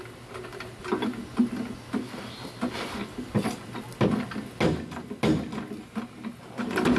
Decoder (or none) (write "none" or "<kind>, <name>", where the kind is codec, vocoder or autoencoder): none